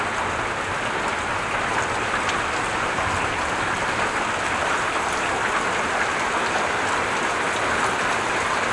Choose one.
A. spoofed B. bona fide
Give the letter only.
B